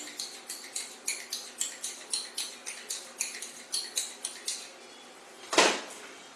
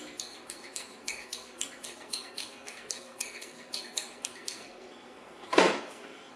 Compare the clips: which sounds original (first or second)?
first